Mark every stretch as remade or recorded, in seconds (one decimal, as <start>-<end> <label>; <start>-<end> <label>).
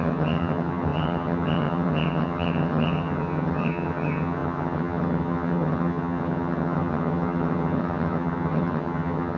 0.0-9.4 remade